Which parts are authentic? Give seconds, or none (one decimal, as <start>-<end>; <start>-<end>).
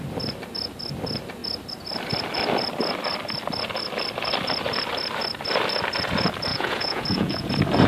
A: 0.0-6.5; 7.5-7.9